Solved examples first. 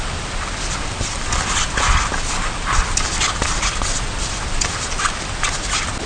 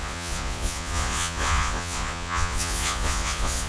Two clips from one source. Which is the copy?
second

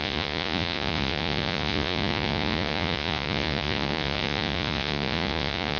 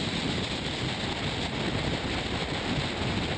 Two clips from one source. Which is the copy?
first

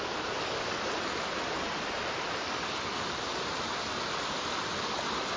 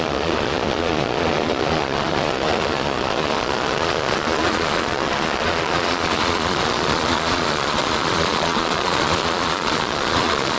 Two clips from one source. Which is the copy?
second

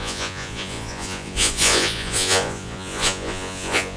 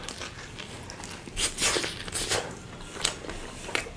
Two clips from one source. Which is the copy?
first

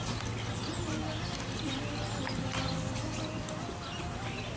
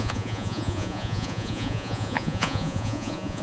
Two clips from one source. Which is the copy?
second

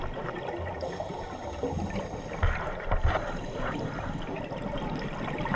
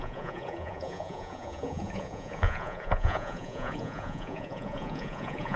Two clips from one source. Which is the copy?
second